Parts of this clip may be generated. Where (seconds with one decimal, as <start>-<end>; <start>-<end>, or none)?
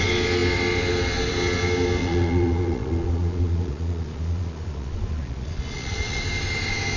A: 2.0-6.2